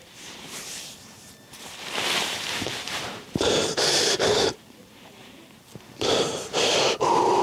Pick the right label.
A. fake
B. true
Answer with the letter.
A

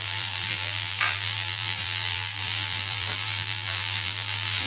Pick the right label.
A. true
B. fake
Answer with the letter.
B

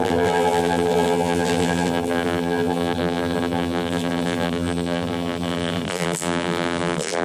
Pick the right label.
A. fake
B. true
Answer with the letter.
A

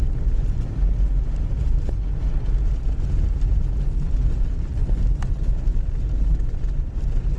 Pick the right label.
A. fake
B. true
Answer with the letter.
B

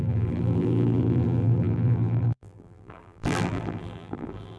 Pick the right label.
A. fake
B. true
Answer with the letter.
A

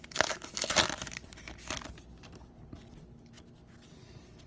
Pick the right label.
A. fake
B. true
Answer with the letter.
B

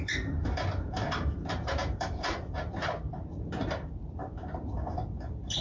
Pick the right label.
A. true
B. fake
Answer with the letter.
B